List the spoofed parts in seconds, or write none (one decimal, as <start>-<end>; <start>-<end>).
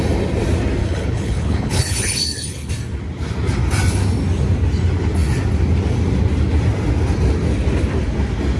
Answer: 0.8-2.7